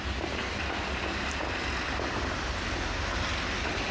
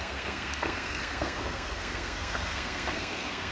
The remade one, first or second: second